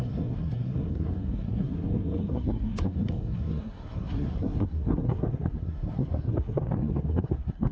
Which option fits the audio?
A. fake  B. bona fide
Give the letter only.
A